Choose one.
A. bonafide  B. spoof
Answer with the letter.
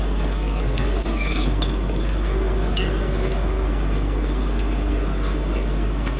B